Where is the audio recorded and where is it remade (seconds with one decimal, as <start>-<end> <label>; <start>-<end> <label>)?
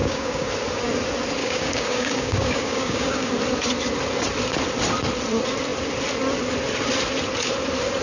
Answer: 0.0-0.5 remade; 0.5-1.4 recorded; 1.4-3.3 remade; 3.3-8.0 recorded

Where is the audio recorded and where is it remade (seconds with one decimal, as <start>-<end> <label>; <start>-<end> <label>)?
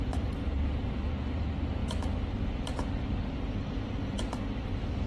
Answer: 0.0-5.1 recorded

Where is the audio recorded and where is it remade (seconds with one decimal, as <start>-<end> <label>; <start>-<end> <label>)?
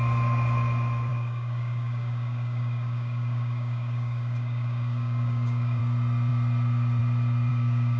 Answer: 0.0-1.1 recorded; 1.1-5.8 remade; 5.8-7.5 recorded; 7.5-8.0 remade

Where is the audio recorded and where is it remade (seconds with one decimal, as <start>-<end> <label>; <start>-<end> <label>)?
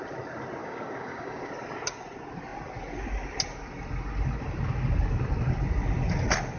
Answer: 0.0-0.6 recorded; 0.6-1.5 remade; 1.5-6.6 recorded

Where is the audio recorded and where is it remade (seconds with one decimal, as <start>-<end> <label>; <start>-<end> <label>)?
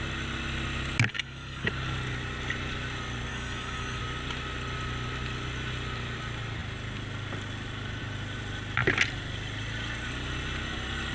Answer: 0.0-1.1 recorded; 1.1-1.7 remade; 1.7-3.3 recorded; 3.3-4.0 remade; 4.0-11.1 recorded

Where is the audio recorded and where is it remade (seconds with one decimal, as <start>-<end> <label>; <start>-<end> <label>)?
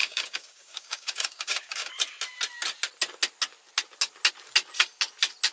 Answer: 0.0-1.9 remade; 1.9-5.5 recorded